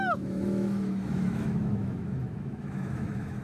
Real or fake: fake